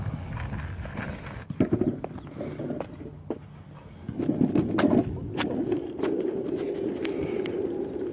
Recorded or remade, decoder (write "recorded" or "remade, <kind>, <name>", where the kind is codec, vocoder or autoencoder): recorded